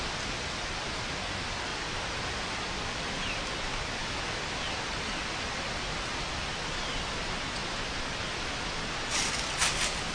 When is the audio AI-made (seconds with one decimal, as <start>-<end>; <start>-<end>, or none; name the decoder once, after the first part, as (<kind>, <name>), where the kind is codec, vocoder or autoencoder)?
1.7-3.5 (vocoder, BigVGAN v2); 4.0-4.5